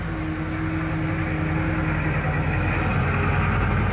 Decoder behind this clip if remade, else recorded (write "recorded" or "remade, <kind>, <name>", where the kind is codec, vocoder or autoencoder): recorded